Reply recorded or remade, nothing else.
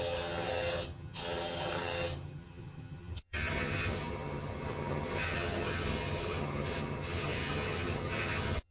remade